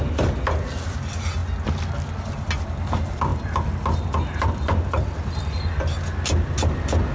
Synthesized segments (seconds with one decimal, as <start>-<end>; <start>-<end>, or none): 3.3-5.5